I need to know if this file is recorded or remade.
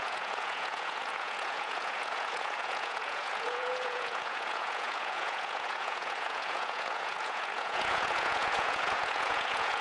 remade